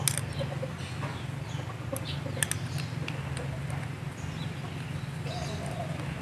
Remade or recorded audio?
recorded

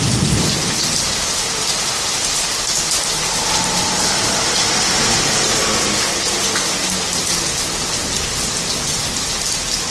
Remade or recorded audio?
recorded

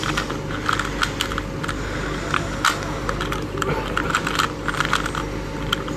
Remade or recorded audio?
remade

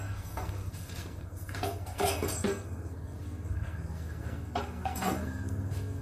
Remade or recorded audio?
remade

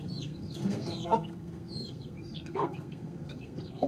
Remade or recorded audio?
remade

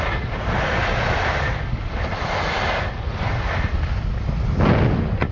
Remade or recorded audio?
recorded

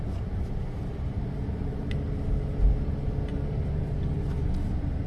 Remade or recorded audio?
recorded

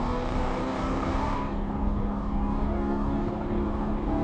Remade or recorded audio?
remade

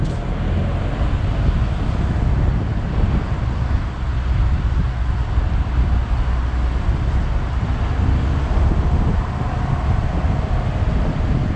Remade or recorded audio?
recorded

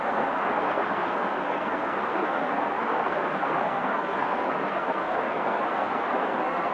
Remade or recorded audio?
remade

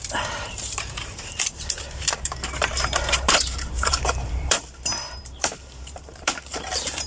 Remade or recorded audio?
remade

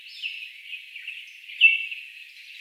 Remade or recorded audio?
recorded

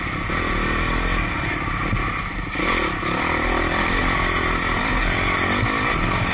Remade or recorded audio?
recorded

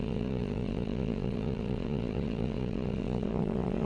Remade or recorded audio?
remade